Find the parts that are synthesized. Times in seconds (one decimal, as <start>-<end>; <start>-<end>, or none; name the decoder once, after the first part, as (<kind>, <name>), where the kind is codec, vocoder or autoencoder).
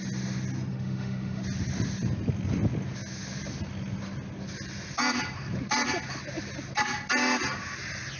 0.7-1.4 (autoencoder, DAC-VAE)